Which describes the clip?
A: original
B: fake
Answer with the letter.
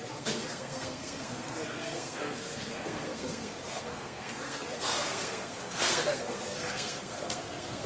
B